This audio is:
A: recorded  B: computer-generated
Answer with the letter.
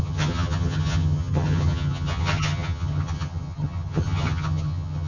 B